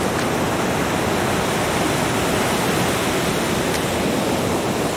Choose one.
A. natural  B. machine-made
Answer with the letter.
A